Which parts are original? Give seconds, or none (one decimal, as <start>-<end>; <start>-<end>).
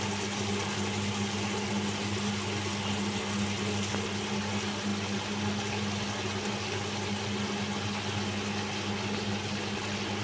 0.0-10.2